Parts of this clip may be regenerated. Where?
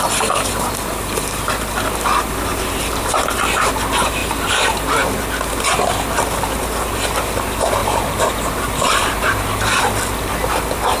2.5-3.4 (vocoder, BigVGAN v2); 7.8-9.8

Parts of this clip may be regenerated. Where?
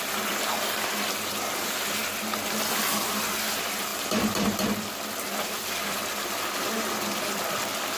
none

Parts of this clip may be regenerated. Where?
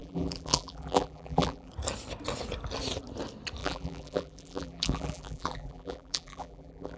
0.0-1.7 (vocoder, BigVGAN v2); 3.6-7.0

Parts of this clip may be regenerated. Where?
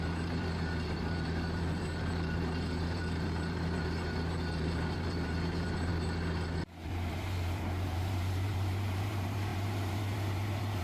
0.0-5.9 (vocoder, BigVGAN v2); 6.9-10.8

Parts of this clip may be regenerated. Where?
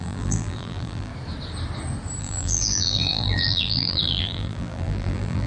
0.0-1.1 (vocoder, BigVGAN v2); 2.2-5.5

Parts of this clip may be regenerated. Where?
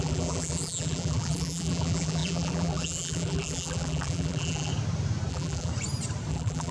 0.0-4.7 (vocoder, BigVGAN v2); 5.3-5.7; 6.3-6.7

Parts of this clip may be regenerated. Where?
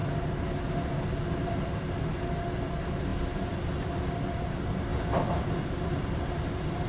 3.1-4.0 (vocoder, BigVGAN v2); 4.9-6.9